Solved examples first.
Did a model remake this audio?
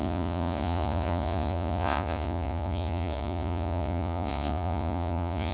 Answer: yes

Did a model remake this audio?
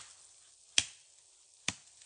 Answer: no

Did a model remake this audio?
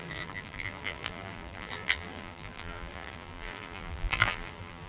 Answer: yes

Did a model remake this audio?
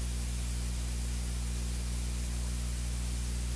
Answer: no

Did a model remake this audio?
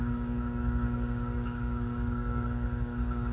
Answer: yes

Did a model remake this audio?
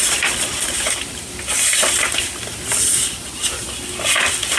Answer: no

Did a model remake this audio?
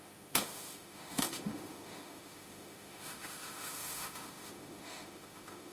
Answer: yes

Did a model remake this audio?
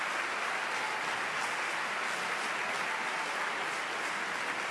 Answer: no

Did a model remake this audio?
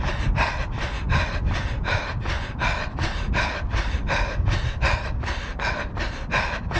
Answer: no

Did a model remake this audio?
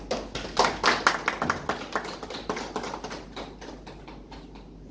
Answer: no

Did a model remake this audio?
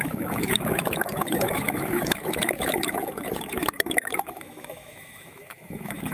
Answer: yes